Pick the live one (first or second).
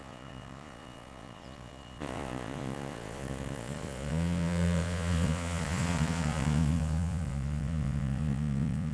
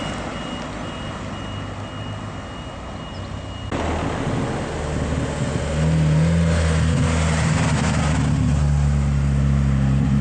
second